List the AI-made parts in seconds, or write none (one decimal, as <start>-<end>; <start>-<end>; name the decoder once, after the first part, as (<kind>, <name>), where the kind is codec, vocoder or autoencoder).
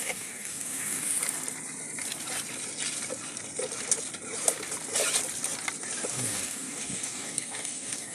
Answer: 0.0-1.2 (codec, DAC); 6.1-8.1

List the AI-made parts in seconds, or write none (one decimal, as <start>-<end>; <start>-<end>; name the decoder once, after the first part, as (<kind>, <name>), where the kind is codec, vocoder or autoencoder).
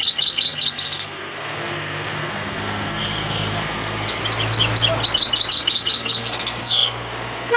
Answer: 0.0-4.2 (codec, SNAC); 5.5-7.6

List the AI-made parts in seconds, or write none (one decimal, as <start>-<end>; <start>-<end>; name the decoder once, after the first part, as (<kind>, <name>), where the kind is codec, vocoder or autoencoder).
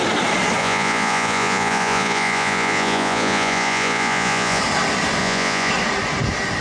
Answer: 0.6-4.6 (vocoder, Vocos); 5.2-5.7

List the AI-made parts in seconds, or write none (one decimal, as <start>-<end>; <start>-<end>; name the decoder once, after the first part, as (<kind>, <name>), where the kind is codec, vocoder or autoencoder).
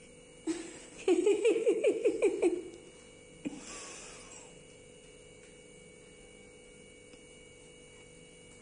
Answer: 1.3-2.1 (autoencoder, DAC-VAE)